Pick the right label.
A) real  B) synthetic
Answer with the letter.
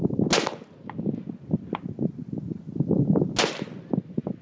A